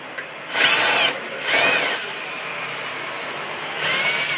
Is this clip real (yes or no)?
yes